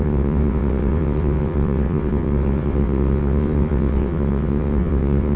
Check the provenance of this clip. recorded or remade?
remade